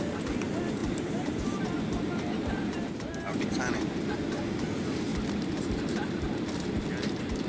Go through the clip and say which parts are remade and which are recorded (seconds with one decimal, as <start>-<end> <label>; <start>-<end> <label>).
0.0-0.8 recorded; 0.8-4.3 remade; 4.3-5.1 recorded; 5.1-6.2 remade; 6.2-7.5 recorded